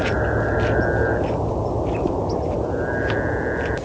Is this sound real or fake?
real